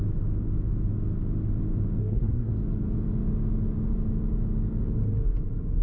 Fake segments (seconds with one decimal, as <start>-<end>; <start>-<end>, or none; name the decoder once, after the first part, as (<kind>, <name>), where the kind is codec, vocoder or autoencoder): 2.0-2.5 (codec, SNAC)